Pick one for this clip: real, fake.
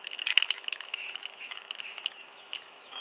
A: fake